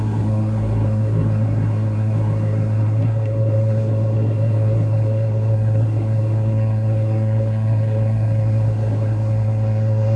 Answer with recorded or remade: remade